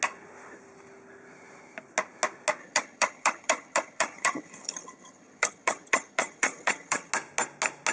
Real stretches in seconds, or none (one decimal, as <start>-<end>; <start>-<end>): 0.0-2.6; 7.1-7.9